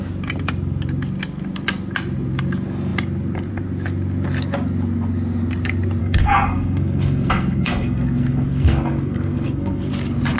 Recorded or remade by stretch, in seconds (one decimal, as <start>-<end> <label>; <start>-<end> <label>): 0.0-6.0 recorded; 6.0-9.9 remade; 9.9-10.4 recorded